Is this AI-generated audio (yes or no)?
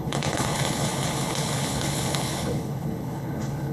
yes